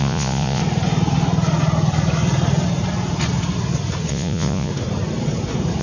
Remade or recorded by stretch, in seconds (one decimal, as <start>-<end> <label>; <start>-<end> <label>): 0.0-0.6 remade; 0.6-4.1 recorded; 4.1-4.7 remade; 4.7-5.8 recorded